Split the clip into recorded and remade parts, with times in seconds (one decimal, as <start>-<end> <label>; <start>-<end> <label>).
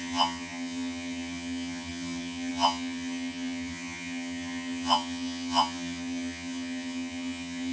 0.0-7.7 remade